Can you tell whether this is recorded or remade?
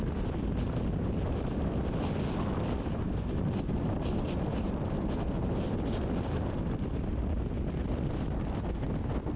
remade